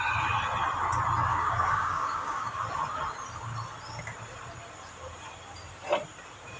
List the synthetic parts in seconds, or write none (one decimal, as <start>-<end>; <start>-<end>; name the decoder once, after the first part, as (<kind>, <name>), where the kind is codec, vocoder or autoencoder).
1.3-2.6 (codec, DAC)